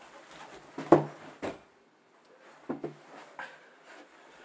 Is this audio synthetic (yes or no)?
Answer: no